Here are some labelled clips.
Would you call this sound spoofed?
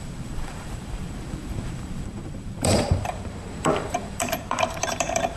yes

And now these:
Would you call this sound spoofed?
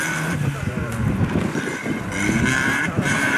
yes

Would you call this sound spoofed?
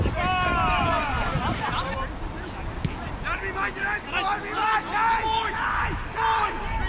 no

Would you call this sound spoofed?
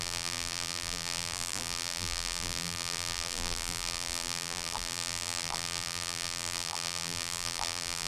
yes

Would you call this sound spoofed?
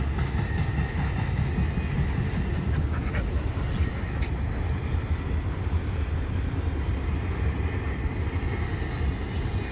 no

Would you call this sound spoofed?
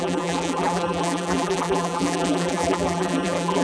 yes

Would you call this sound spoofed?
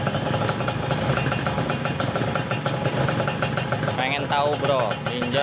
no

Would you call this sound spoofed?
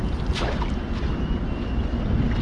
no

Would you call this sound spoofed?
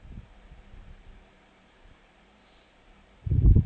yes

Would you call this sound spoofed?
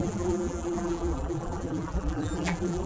yes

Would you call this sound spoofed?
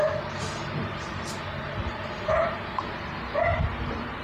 yes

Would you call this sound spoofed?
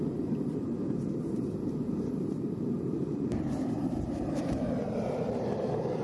yes